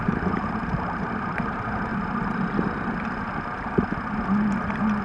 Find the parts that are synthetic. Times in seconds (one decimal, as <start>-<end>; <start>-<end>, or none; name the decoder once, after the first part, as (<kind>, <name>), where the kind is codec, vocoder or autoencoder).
0.0-1.9 (vocoder, BigVGAN v2)